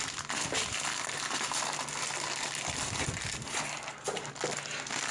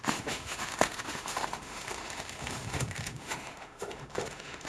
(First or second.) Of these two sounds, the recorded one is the first